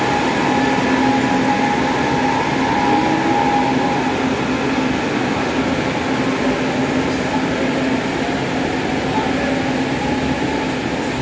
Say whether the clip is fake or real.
real